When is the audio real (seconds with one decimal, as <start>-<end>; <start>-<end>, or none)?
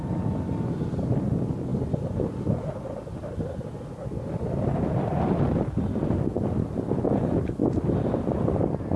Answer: 0.0-9.0